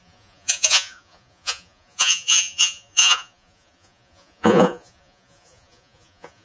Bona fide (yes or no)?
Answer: no